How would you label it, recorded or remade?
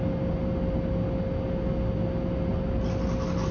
recorded